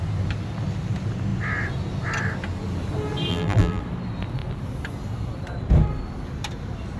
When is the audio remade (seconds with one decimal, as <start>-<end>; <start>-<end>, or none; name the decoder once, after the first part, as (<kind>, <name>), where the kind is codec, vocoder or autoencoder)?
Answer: 3.3-3.8 (vocoder, BigVGAN v2)